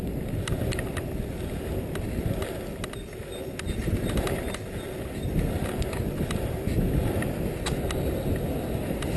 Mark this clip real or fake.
real